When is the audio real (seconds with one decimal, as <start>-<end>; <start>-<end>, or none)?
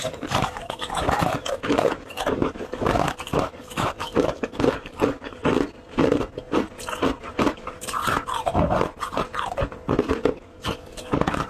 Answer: 5.4-7.5; 8.0-10.3